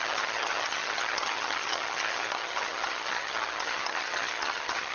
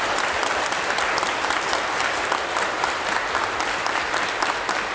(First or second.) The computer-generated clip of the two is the first